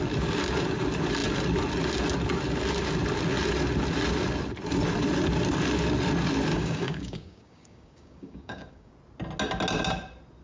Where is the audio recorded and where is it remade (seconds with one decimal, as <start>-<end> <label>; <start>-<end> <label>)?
0.0-6.5 recorded; 6.5-8.9 remade; 8.9-10.4 recorded